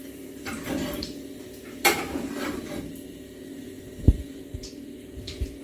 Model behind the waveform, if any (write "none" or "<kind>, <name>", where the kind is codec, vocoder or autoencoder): vocoder, BigVGAN v2